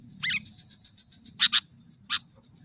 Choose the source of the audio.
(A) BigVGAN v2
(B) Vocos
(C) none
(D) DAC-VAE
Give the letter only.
C